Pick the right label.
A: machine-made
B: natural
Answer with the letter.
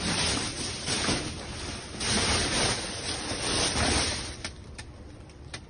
A